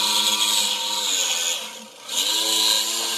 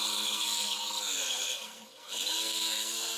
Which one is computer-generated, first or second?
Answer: second